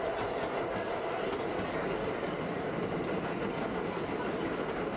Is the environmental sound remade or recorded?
recorded